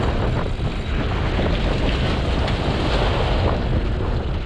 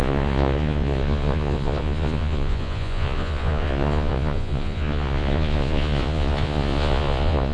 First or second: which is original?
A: first